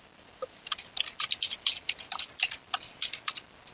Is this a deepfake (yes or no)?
no